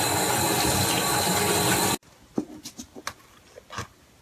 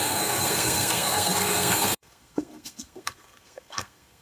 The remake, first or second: second